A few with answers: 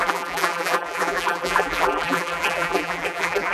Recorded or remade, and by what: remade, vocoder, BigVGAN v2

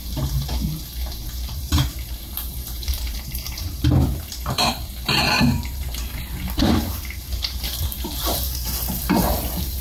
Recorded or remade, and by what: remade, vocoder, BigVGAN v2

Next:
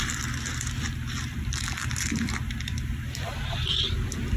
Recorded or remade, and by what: remade, vocoder, BigVGAN v2